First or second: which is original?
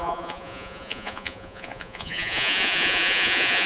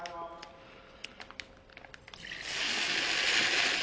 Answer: second